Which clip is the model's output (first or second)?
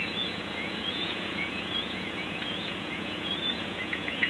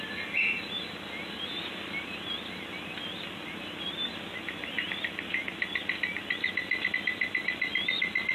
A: first